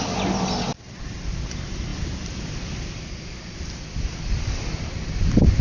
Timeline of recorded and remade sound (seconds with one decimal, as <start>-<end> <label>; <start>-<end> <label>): 0.0-0.7 recorded; 0.7-1.5 remade; 1.5-5.6 recorded